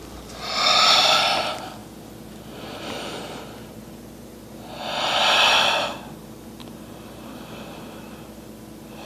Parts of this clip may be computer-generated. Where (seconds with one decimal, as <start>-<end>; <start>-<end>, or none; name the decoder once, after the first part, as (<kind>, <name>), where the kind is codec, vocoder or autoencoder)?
none